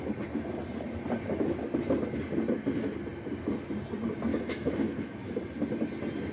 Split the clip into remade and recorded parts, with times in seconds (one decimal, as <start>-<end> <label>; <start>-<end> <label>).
0.0-4.3 recorded; 4.3-5.3 remade; 5.3-6.3 recorded